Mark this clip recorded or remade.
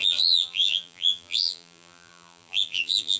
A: remade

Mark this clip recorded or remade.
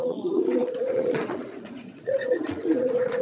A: remade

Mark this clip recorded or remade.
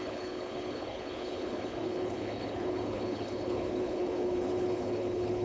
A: remade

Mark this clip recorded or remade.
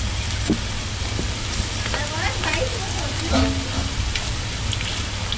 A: recorded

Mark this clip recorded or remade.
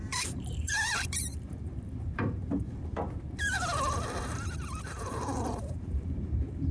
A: remade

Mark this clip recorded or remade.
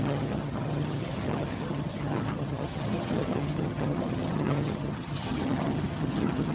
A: remade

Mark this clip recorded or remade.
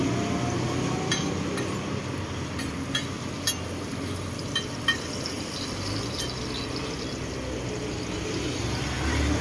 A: recorded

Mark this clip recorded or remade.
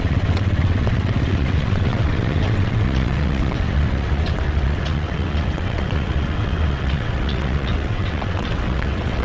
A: remade